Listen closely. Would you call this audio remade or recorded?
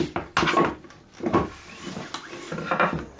recorded